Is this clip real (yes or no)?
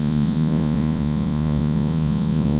no